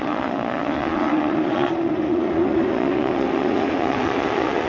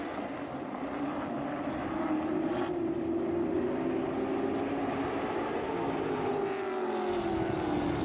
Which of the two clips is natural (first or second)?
second